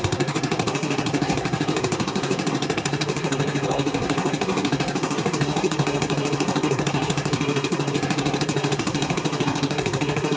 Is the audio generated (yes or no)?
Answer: yes